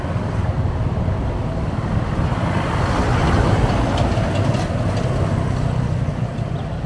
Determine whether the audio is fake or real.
real